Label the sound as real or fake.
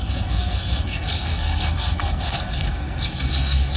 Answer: fake